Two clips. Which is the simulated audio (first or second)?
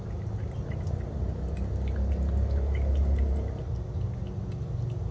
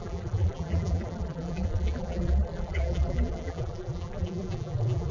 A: second